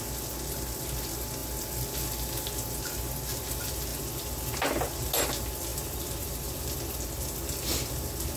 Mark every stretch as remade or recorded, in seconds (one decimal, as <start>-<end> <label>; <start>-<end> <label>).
0.0-5.7 recorded; 5.7-6.8 remade; 6.8-8.4 recorded